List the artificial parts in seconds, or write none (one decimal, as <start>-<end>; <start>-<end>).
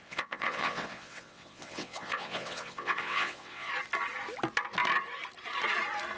0.0-3.7